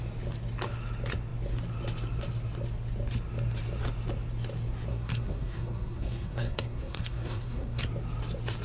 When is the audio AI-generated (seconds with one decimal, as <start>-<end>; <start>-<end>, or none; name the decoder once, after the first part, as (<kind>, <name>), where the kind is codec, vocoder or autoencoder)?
4.9-7.8 (codec, SNAC)